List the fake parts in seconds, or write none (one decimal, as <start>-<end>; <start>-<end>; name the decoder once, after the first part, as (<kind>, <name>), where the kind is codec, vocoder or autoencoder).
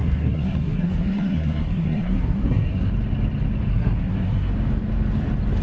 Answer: 0.0-2.9 (codec, SNAC); 3.7-4.5